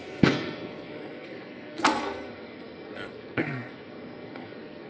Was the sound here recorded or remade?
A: remade